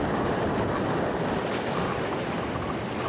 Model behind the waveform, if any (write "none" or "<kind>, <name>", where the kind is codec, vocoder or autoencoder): none